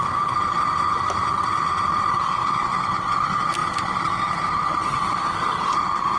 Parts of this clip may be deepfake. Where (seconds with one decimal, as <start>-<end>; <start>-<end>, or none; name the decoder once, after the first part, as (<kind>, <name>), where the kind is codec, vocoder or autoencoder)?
none